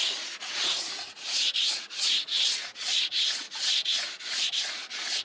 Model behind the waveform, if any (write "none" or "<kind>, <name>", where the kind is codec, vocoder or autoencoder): vocoder, Vocos